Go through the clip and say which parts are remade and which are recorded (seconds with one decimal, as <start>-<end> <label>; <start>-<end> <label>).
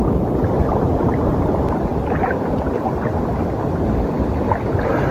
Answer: 0.0-0.4 recorded; 0.4-1.3 remade; 1.3-5.1 recorded